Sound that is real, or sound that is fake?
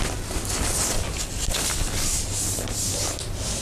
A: real